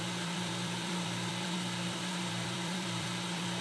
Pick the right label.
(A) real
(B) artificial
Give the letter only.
B